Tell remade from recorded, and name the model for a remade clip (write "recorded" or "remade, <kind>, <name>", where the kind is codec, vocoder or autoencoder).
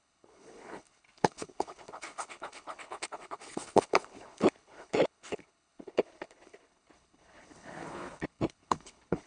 remade, codec, HILCodec